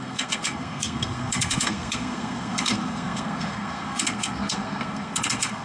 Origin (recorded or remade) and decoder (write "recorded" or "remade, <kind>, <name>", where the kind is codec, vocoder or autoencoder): remade, codec, SNAC